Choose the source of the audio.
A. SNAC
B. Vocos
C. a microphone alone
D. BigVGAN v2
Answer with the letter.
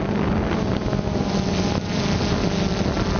C